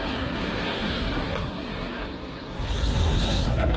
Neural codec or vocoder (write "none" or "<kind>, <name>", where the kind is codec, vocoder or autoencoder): codec, SNAC